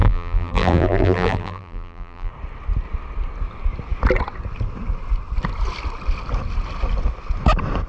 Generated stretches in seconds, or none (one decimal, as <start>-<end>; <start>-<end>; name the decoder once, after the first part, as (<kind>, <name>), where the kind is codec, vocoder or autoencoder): 0.0-2.3 (vocoder, BigVGAN v2)